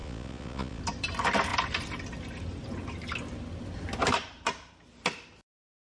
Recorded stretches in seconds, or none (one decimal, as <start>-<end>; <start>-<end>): 0.8-5.9